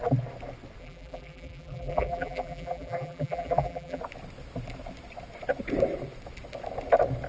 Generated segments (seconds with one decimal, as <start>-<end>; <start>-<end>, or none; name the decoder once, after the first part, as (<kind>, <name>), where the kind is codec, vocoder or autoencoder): 0.8-4.0 (vocoder, BigVGAN v2)